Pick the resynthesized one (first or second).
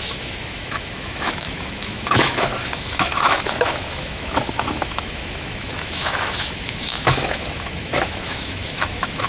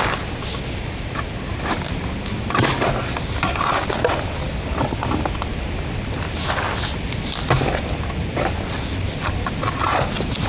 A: first